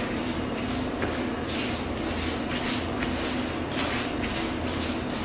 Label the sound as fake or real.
real